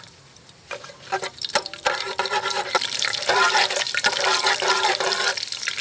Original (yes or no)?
no